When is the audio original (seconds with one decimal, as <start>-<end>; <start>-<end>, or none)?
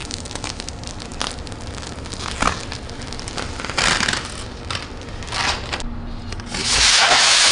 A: 0.7-6.6